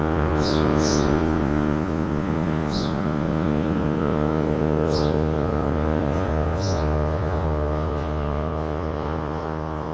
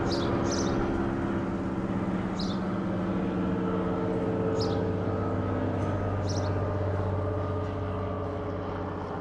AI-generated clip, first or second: first